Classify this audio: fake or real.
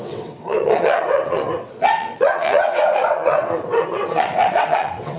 fake